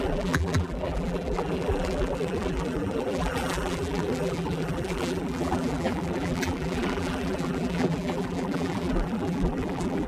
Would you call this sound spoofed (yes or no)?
yes